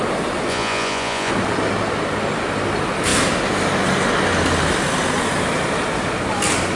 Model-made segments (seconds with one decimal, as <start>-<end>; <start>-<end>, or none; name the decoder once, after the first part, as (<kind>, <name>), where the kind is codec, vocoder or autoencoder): 0.5-1.3 (vocoder, Vocos)